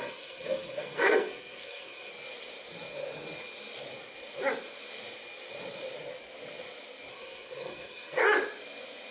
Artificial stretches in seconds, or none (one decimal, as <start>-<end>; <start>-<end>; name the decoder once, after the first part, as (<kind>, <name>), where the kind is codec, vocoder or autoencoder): 0.0-2.1 (codec, SNAC); 7.1-8.2